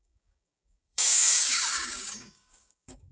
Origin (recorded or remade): remade